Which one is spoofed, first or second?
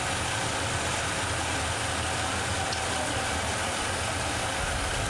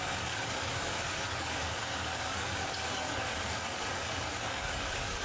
second